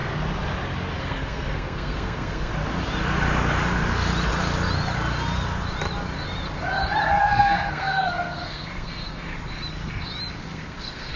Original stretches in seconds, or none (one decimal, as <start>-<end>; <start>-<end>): 0.0-1.0; 2.5-7.2; 9.3-10.4